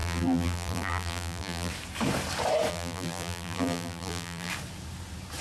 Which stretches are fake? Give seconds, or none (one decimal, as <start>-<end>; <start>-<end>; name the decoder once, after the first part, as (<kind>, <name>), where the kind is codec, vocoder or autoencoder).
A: 0.0-1.7 (vocoder, BigVGAN v2); 2.7-4.5